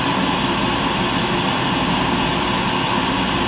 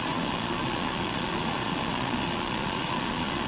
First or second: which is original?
first